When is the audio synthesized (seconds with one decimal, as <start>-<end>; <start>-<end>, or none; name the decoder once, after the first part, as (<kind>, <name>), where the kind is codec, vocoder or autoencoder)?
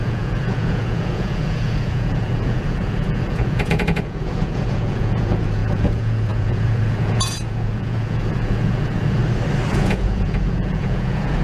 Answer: 0.0-9.2 (vocoder, Vocos); 9.7-11.4